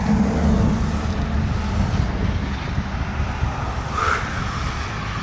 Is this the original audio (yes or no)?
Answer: yes